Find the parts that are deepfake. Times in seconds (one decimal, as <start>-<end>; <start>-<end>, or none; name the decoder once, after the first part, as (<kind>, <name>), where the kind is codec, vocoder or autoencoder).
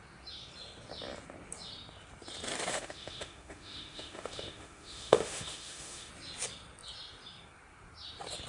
2.7-6.1 (autoencoder, DAC-VAE)